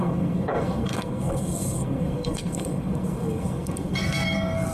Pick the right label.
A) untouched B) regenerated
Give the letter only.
B